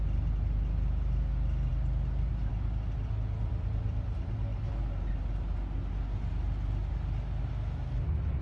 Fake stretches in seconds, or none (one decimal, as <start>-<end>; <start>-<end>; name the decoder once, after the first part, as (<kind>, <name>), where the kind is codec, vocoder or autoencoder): none